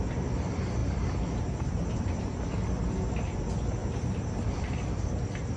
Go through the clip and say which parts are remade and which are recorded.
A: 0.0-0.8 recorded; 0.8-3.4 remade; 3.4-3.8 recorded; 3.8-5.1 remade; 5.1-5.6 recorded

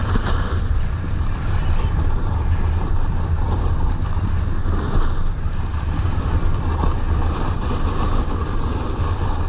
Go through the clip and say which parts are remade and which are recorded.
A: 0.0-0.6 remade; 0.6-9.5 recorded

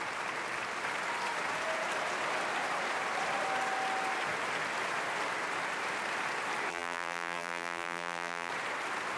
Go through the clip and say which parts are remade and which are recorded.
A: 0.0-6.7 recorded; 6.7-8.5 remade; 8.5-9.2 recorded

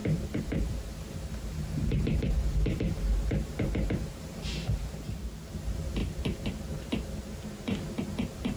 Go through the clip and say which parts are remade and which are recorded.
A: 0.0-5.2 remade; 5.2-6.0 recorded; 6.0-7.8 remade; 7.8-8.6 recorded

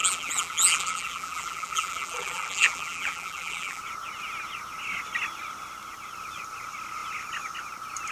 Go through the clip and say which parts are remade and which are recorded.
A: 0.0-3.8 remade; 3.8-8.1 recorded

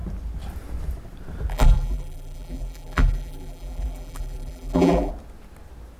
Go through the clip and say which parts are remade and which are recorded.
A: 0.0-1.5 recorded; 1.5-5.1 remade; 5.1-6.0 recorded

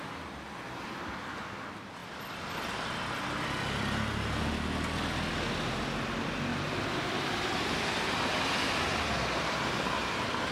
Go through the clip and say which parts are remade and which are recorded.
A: 0.0-2.0 recorded; 2.0-3.2 remade; 3.2-6.5 recorded; 6.5-8.7 remade; 8.7-10.5 recorded

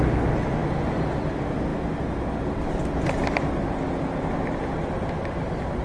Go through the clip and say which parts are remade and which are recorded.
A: 0.0-0.6 remade; 0.6-1.1 recorded; 1.1-1.7 remade; 1.7-2.5 recorded; 2.5-5.8 remade